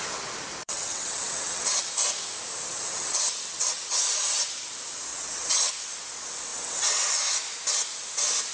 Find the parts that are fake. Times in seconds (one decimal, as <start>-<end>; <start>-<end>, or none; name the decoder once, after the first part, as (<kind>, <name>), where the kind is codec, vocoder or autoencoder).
0.6-1.9 (vocoder, WaveNeXt); 2.9-4.0; 5.1-5.7; 6.5-7.1